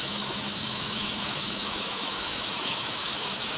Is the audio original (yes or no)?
no